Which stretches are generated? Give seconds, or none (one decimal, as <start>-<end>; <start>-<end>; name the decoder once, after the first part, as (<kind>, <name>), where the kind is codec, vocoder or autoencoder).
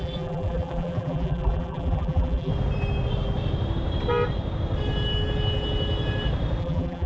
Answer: 0.0-2.5 (vocoder, BigVGAN v2); 6.6-7.1